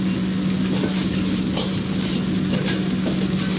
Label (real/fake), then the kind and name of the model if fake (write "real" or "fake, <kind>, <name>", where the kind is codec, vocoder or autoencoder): real